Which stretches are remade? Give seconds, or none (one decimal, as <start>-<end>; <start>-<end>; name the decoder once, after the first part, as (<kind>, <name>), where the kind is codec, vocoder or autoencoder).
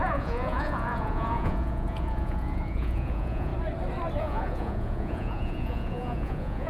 0.0-3.5 (vocoder, Vocos); 4.2-6.7